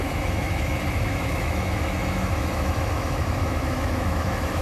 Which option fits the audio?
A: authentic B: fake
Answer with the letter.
B